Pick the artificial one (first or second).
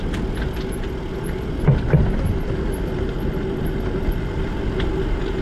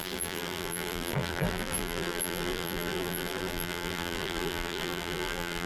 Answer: second